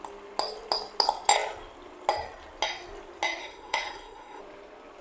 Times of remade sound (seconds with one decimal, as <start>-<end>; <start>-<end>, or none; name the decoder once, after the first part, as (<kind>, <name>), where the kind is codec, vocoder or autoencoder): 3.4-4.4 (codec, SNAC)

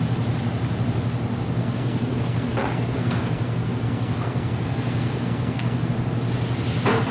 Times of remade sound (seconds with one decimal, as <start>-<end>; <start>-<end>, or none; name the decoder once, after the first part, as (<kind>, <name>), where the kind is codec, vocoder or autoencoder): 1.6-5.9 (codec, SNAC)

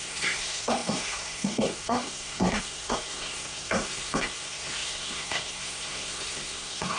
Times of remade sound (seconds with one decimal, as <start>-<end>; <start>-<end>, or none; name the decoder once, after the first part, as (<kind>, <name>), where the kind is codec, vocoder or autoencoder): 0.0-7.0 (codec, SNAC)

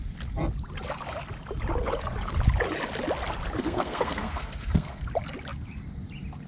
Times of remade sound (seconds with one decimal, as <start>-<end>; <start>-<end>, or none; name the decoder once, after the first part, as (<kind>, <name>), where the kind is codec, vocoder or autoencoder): 3.6-5.0 (codec, SNAC)